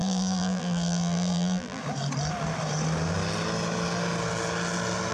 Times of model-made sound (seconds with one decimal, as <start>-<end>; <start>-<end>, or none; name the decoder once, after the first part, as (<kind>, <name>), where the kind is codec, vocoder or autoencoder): 0.0-1.8 (vocoder, BigVGAN v2)

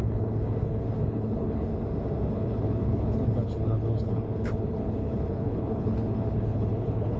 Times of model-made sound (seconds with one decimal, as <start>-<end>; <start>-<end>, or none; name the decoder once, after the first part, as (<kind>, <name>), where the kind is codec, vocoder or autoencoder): 0.0-1.7 (codec, HILCodec); 2.3-7.2